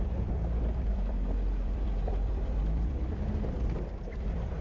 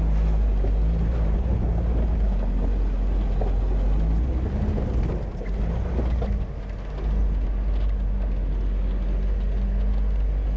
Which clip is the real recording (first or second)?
second